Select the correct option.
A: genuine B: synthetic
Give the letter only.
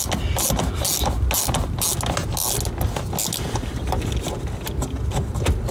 A